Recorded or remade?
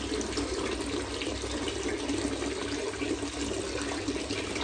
recorded